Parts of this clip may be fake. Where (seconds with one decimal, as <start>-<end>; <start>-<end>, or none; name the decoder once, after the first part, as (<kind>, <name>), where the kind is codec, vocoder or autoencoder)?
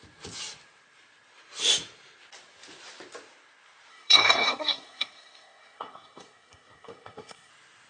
3.9-7.5 (codec, SNAC)